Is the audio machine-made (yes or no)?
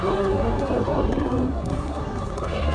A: yes